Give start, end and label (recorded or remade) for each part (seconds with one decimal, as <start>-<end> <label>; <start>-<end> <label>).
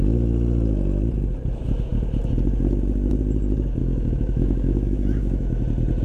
0.0-3.8 recorded; 3.8-5.6 remade; 5.6-6.0 recorded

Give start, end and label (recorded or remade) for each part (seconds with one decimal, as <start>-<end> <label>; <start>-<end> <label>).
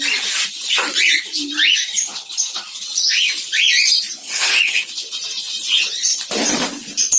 0.0-4.2 recorded; 4.2-4.9 remade; 4.9-7.2 recorded